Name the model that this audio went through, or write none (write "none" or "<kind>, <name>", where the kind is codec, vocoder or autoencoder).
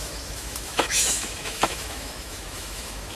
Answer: autoencoder, DAC-VAE